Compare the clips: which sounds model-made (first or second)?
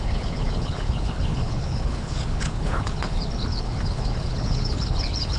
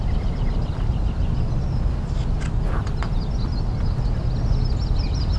first